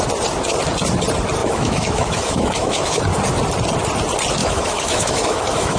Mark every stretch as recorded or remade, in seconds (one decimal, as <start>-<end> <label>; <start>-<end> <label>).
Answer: 0.0-1.4 recorded; 1.4-3.0 remade; 3.0-4.4 recorded; 4.4-5.8 remade